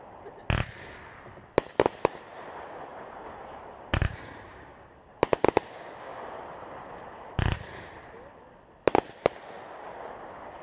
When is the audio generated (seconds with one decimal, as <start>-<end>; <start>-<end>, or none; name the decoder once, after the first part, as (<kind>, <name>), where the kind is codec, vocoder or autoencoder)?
2.9-5.2 (vocoder, BigVGAN v2); 6.1-6.7